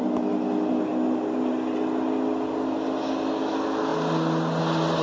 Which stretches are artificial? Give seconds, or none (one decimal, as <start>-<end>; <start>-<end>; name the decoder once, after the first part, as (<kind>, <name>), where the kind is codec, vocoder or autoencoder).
none